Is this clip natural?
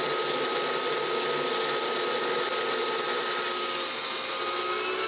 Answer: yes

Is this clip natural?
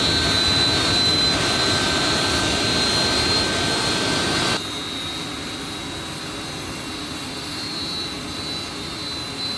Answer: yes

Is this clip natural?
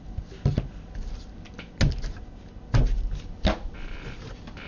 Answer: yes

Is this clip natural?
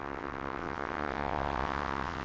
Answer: no